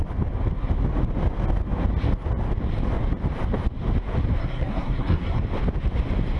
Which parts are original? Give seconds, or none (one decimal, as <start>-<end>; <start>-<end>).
0.0-4.4; 5.4-6.4